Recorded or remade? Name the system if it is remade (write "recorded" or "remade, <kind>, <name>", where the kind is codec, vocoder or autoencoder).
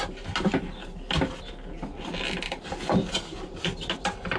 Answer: recorded